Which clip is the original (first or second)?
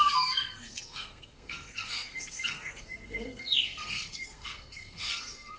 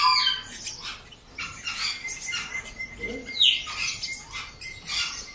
second